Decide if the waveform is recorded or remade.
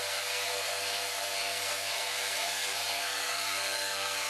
remade